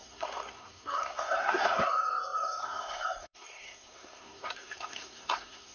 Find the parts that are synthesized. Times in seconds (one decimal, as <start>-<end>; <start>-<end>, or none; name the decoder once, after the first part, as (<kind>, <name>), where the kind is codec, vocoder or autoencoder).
0.0-5.7 (codec, SNAC)